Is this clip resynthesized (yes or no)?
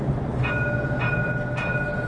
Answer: no